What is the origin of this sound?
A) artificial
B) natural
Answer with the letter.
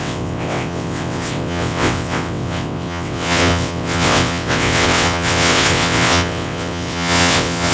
A